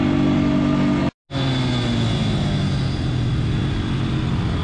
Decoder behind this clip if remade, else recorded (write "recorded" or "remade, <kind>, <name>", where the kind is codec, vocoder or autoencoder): recorded